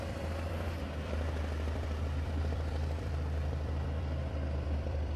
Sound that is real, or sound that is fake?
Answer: fake